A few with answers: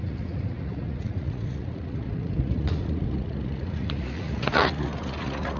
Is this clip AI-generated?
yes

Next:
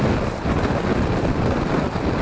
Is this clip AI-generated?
no